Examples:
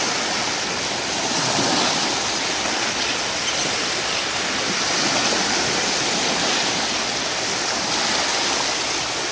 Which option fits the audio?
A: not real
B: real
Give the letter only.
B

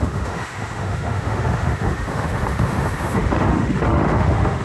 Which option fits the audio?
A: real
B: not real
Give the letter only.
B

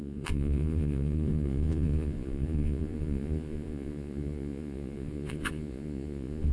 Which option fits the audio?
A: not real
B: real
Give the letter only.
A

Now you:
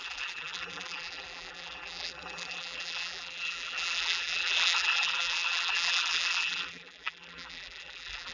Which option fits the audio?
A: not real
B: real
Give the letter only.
A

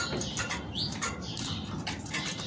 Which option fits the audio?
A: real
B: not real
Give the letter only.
A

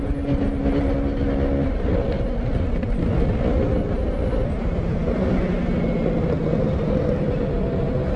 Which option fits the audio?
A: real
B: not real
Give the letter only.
A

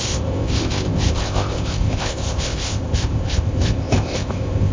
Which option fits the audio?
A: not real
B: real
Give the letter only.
A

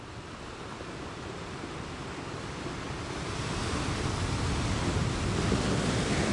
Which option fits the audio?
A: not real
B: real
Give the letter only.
B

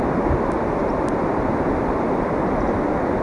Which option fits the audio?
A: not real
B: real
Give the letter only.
B